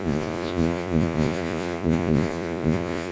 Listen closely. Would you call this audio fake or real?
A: fake